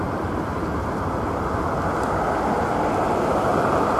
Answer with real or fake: real